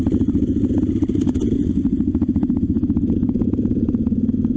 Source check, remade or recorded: recorded